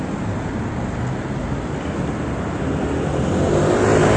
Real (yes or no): yes